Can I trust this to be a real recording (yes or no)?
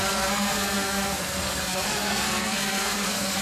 no